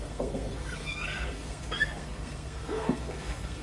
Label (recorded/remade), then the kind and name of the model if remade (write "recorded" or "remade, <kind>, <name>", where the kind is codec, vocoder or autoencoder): remade, codec, SNAC